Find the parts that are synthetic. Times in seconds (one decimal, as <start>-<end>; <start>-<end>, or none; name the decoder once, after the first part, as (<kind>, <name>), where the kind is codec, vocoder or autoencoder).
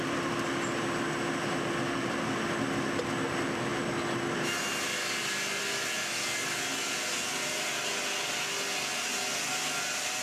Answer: none